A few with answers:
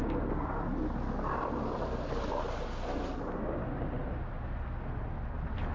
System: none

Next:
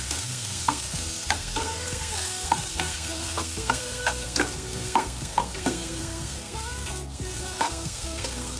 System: codec, SNAC